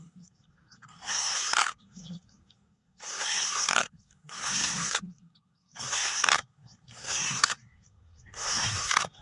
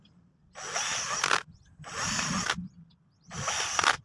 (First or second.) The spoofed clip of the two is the first